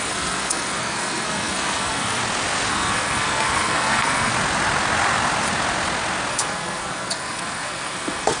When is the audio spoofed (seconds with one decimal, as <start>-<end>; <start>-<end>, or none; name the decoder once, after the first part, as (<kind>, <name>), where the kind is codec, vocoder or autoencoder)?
0.0-2.2 (codec, SNAC); 2.7-4.3; 6.3-8.4